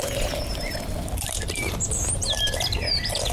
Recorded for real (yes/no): no